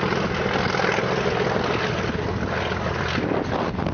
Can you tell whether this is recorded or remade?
recorded